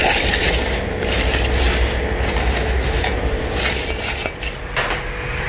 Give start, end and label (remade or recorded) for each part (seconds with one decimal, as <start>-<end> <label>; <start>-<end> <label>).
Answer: 0.0-2.4 recorded; 2.4-3.0 remade; 3.0-5.5 recorded